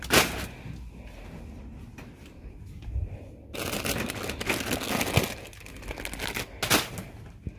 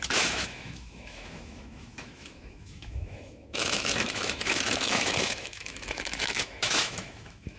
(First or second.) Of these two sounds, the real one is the first